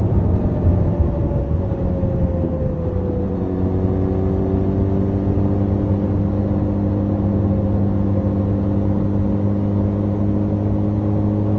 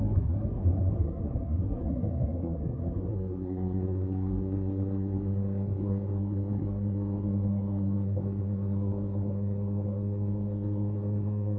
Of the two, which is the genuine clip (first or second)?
first